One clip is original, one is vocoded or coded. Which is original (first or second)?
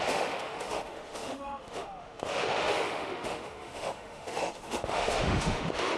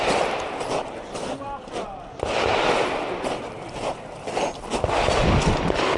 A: second